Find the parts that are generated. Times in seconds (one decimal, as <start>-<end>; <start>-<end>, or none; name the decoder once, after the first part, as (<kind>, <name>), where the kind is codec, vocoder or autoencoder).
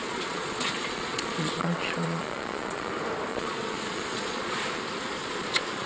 0.0-2.9 (vocoder, Vocos); 3.3-4.8; 5.2-5.9